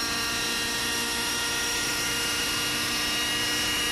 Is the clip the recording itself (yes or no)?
yes